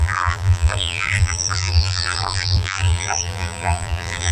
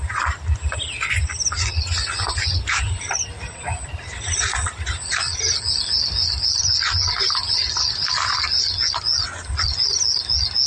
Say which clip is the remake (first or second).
first